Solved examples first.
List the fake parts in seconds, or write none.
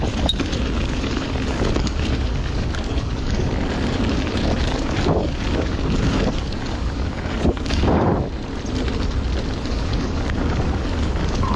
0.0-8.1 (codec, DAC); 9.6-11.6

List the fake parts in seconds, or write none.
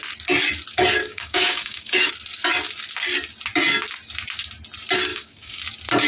1.0-2.1 (codec, DAC); 5.1-5.6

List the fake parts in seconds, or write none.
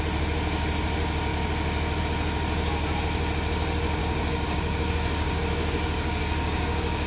4.0-7.1 (codec, DAC)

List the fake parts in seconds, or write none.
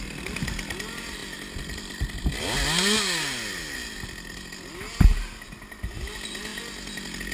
none